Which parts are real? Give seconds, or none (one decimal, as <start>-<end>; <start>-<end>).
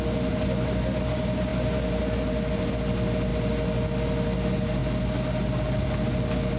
0.0-6.6